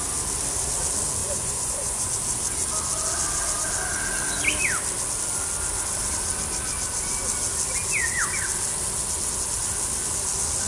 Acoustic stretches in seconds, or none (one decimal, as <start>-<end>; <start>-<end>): 0.0-1.2; 2.1-10.7